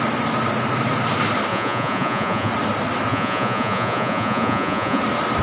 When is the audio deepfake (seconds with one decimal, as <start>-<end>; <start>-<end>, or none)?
1.5-2.5; 3.1-5.0